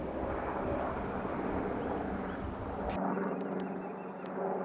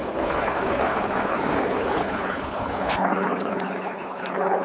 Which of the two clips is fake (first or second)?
second